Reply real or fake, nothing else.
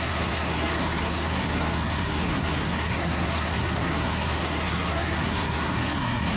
fake